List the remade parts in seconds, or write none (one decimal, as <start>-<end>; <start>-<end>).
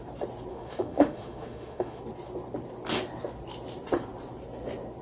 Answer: 0.5-2.0